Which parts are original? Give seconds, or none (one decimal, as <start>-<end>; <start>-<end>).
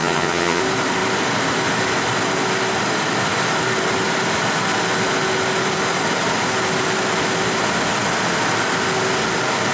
0.6-9.7